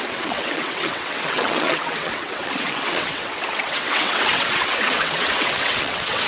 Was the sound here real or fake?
fake